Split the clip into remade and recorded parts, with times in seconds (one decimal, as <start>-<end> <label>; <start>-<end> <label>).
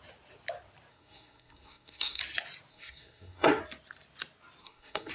0.0-0.9 recorded; 0.9-2.2 remade; 2.2-2.7 recorded; 2.7-3.6 remade; 3.6-4.6 recorded; 4.6-5.1 remade